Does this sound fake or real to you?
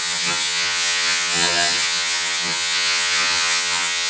fake